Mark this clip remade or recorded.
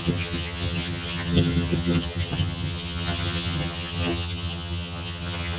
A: remade